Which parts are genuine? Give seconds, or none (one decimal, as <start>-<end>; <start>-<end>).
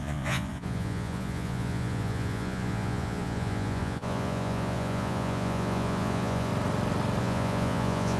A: 6.5-7.2